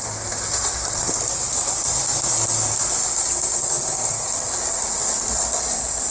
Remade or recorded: recorded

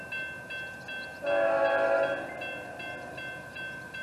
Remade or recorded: recorded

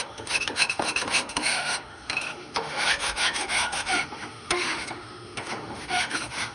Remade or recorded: remade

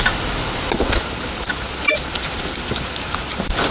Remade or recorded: recorded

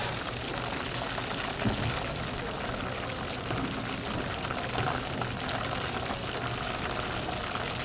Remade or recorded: recorded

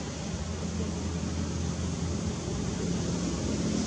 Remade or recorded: recorded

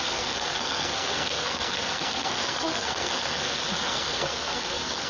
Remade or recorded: remade